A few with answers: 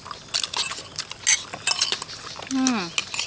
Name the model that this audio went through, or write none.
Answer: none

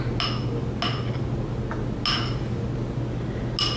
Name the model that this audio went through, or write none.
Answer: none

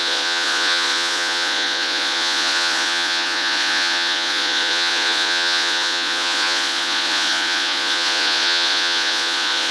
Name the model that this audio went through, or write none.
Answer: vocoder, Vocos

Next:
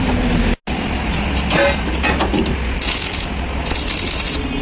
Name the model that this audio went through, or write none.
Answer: none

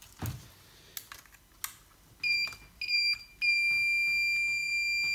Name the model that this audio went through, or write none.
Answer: none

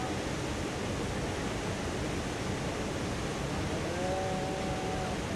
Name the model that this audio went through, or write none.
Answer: none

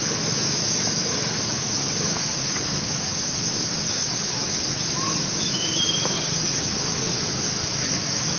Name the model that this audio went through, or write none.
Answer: autoencoder, DAC-VAE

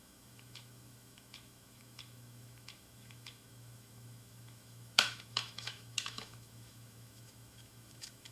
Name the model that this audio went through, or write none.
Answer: autoencoder, DAC-VAE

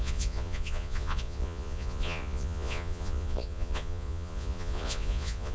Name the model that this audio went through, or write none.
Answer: vocoder, Vocos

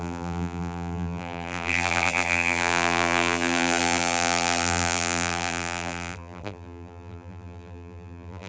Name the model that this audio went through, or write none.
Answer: vocoder, BigVGAN v2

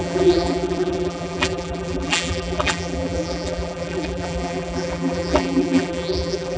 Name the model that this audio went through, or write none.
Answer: vocoder, BigVGAN v2